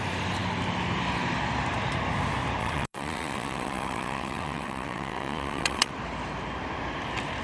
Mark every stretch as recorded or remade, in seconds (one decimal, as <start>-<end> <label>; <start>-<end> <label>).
0.0-2.6 recorded; 2.6-5.9 remade; 5.9-7.4 recorded